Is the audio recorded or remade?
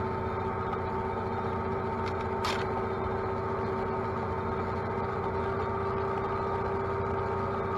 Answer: recorded